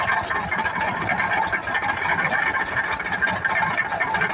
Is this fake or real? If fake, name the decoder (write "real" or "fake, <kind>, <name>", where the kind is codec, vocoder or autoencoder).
real